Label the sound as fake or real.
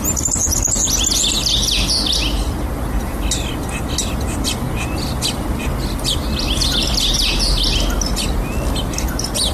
real